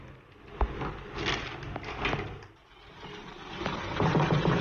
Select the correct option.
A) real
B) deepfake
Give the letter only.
A